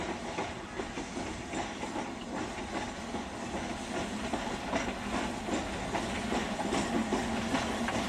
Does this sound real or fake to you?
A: real